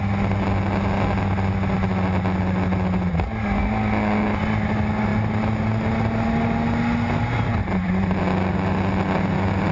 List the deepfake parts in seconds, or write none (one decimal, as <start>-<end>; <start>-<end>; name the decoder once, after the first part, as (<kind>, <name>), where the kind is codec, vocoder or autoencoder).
7.6-8.2 (vocoder, BigVGAN v2)